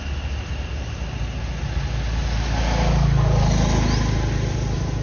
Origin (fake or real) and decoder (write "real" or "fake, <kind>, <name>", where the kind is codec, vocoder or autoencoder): real